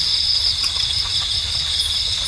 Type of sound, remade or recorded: recorded